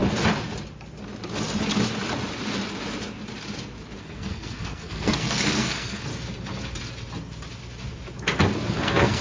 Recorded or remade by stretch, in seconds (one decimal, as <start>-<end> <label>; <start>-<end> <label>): 0.0-4.0 recorded; 4.0-6.1 remade; 6.1-8.7 recorded; 8.7-9.2 remade